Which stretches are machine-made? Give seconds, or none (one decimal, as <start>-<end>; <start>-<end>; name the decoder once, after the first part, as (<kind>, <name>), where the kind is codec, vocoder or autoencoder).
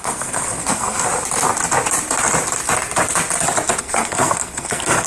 0.0-1.1 (codec, SNAC); 3.8-5.1